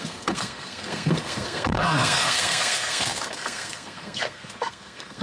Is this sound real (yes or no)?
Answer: no